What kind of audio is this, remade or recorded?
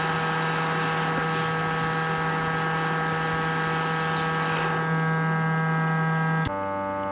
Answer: recorded